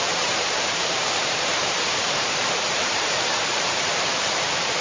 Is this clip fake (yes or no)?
yes